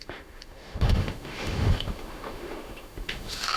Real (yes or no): no